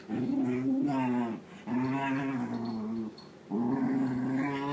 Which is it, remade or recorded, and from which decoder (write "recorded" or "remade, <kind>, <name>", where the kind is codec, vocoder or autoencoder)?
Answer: recorded